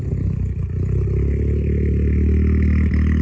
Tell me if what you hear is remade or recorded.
recorded